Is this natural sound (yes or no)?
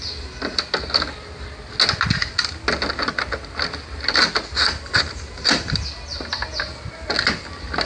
yes